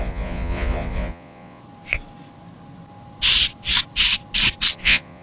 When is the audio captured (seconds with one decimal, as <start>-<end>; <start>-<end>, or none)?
1.6-4.7